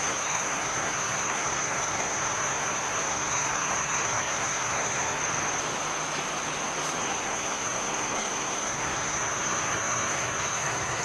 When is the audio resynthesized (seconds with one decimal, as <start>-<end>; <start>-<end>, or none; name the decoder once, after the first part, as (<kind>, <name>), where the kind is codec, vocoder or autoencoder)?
0.0-5.2 (codec, SNAC); 7.0-11.0